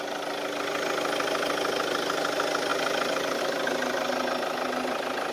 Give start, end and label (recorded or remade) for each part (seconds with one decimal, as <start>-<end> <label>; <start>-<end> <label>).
0.0-2.7 recorded; 2.7-3.4 remade; 3.4-5.3 recorded